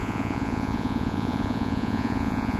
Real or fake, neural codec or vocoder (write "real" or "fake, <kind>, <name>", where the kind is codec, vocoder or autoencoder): fake, vocoder, Vocos